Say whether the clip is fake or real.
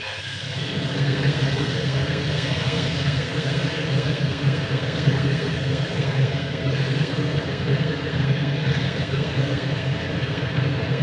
fake